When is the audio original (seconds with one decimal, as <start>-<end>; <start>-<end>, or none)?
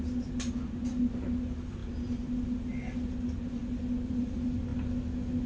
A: 0.0-5.5